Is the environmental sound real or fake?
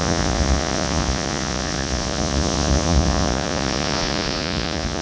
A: fake